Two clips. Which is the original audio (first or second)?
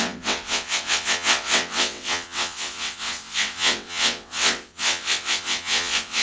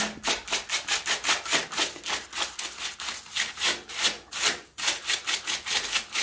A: second